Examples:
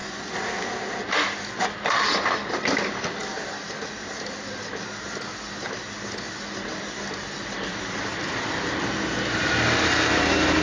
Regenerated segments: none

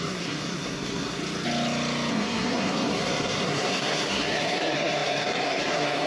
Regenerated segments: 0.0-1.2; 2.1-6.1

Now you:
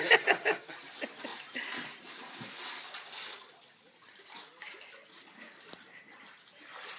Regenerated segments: none

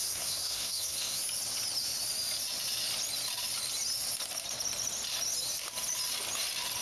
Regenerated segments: 0.0-1.2

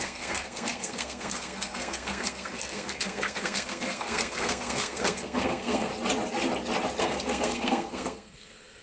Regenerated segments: 0.0-5.9; 7.0-8.8

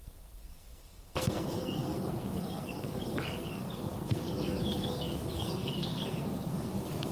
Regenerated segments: 0.0-7.1